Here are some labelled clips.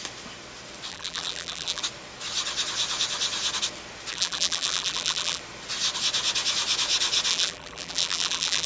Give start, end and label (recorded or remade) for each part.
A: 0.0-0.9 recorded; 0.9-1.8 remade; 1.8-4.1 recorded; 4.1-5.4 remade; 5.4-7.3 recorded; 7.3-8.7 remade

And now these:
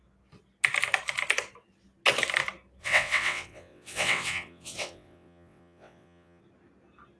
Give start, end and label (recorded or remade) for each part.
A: 0.0-2.8 recorded; 2.8-6.4 remade; 6.4-7.2 recorded

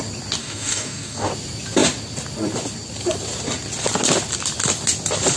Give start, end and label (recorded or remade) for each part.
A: 0.0-0.4 recorded; 0.4-1.3 remade; 1.3-5.4 recorded

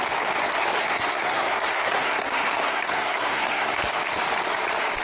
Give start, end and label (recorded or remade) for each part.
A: 0.0-0.8 recorded; 0.8-3.8 remade; 3.8-5.0 recorded

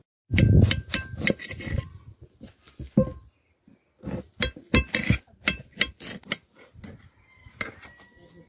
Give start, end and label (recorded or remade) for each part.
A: 0.0-8.5 recorded

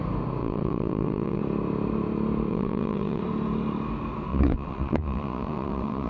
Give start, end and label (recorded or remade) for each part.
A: 0.0-0.4 recorded; 0.4-1.4 remade; 1.4-2.5 recorded; 2.5-3.2 remade; 3.2-4.3 recorded; 4.3-6.1 remade